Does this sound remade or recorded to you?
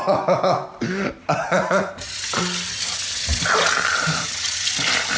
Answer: recorded